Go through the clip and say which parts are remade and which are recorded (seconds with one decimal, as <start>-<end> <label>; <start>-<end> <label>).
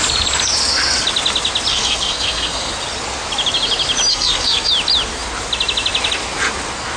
0.0-1.7 recorded; 1.7-2.7 remade; 2.7-4.1 recorded; 4.1-4.7 remade; 4.7-7.0 recorded